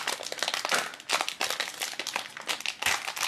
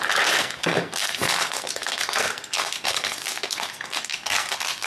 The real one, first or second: first